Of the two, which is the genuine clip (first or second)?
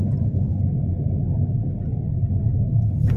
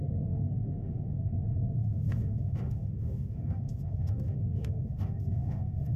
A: first